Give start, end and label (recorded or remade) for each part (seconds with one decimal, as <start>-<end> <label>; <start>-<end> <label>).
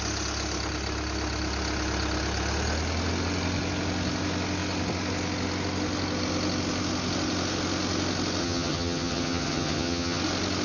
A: 0.0-8.4 recorded; 8.4-10.2 remade; 10.2-10.6 recorded